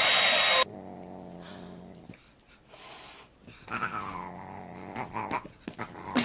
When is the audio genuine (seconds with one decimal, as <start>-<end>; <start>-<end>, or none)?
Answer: 0.0-6.2